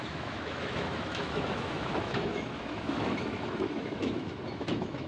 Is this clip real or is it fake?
fake